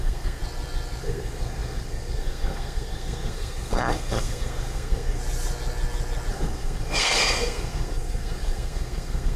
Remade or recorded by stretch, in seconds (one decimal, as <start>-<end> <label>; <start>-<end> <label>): 0.0-0.4 remade; 0.4-1.0 recorded; 1.0-5.2 remade; 5.2-6.3 recorded; 6.3-9.4 remade